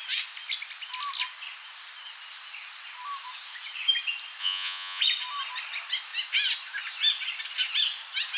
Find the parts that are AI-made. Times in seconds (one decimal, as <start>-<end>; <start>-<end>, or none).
4.4-5.0